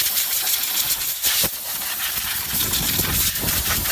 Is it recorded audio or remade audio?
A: recorded